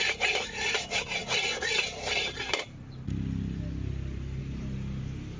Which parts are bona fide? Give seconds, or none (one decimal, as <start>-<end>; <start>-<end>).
1.2-4.4